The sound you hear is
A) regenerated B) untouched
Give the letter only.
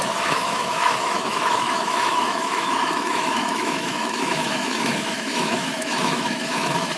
A